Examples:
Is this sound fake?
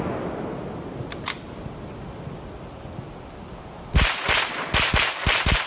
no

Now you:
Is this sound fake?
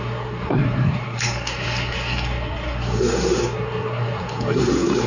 yes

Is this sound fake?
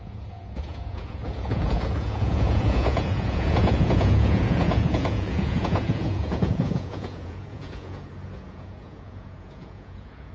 yes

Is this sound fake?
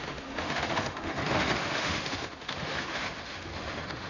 yes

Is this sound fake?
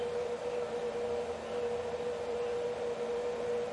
no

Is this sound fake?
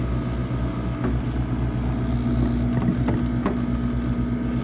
no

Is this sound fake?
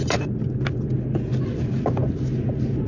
no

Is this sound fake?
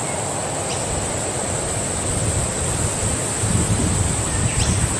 no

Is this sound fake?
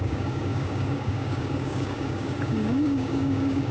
yes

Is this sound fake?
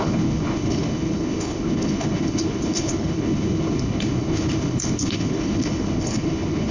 yes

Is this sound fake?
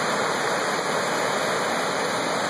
no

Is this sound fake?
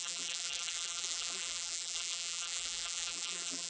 yes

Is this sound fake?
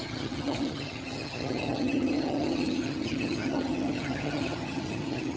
yes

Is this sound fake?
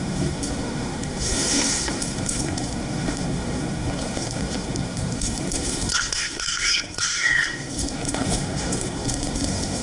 yes